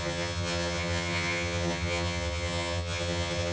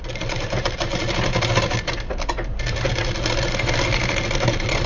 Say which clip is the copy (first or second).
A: first